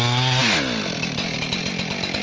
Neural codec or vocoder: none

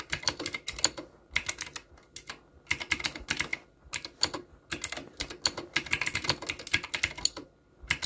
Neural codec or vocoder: none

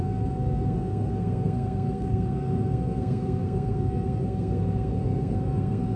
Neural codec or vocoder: codec, SNAC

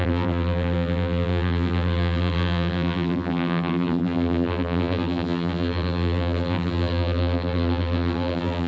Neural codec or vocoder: vocoder, BigVGAN v2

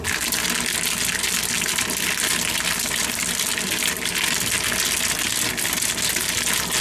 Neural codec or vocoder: none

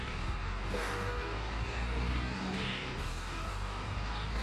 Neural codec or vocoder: codec, DAC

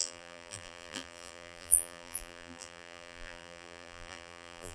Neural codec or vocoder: vocoder, BigVGAN v2